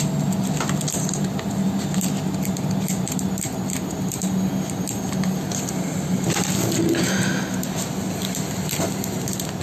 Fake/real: real